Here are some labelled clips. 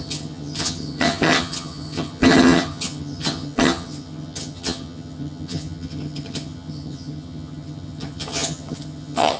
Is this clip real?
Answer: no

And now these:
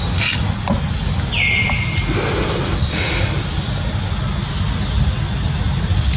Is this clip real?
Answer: yes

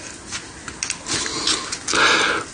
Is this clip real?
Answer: yes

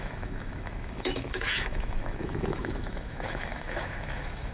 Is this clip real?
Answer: no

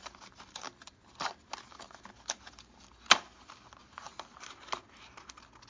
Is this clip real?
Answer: yes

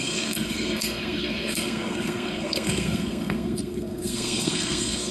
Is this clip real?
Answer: no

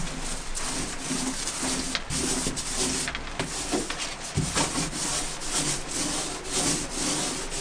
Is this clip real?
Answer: yes